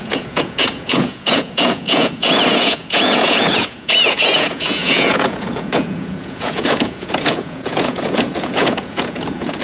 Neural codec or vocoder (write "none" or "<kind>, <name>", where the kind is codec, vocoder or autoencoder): vocoder, Vocos